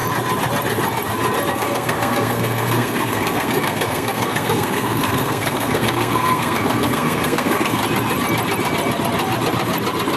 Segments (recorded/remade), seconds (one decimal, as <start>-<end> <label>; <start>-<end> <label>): 0.0-1.5 recorded; 1.5-7.8 remade; 7.8-10.2 recorded